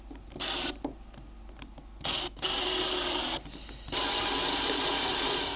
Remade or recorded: recorded